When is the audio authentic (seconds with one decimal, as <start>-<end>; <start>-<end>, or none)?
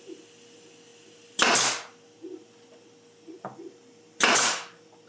0.0-5.1